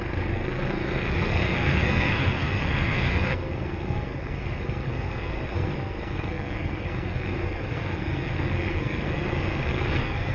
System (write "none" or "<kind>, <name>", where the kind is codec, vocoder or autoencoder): codec, SNAC